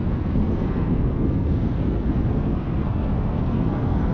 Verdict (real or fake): fake